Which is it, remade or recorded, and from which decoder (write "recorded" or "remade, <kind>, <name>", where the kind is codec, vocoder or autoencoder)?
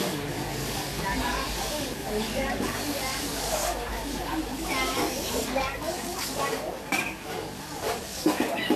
remade, codec, DAC